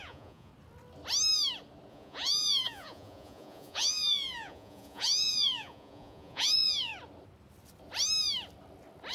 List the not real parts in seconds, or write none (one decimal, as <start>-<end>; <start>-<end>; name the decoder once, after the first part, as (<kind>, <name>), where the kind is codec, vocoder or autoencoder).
0.0-0.5 (vocoder, Vocos); 1.9-6.9